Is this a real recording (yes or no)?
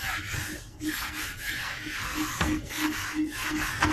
no